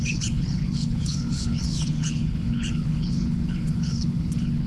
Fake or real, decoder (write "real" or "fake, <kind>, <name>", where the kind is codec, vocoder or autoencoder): fake, codec, HILCodec